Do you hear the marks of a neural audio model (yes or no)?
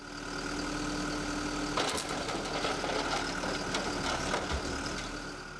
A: no